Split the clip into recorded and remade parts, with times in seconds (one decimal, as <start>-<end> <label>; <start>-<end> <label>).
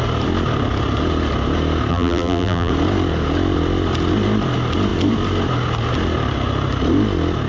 0.0-1.9 recorded; 1.9-2.7 remade; 2.7-7.5 recorded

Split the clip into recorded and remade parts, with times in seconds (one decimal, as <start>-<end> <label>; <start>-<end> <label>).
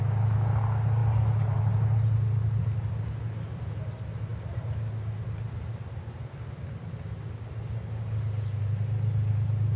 0.0-9.8 recorded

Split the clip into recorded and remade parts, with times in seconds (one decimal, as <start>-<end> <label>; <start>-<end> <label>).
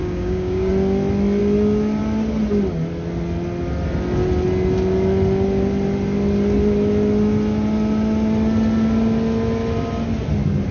0.0-0.7 remade; 0.7-10.7 recorded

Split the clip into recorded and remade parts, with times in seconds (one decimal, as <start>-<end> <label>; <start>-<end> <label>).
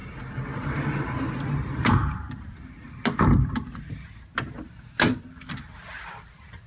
0.0-6.7 recorded